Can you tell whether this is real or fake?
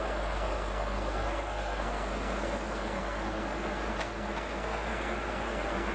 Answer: fake